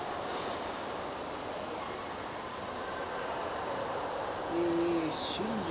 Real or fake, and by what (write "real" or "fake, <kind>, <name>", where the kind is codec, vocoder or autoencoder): fake, vocoder, BigVGAN v2